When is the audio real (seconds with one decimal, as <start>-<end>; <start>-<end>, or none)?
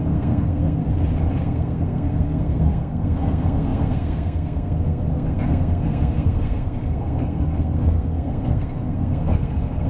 0.8-1.4